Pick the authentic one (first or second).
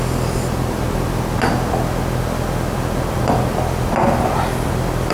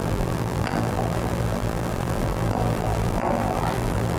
first